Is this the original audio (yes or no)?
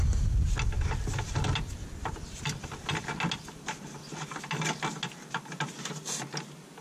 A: yes